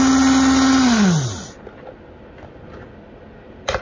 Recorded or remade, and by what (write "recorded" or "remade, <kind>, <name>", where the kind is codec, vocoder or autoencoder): recorded